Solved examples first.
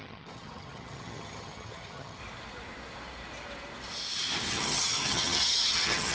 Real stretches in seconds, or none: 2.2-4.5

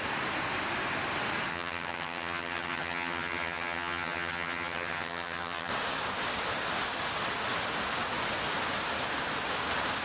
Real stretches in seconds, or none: 0.0-1.5; 5.7-10.0

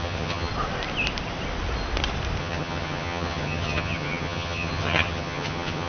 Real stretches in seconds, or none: 0.5-2.4

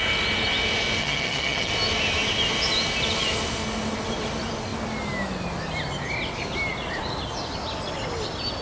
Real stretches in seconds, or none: 0.0-1.0; 1.7-8.6

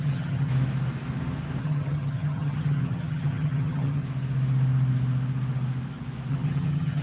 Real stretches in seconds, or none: 0.5-1.6; 4.0-6.3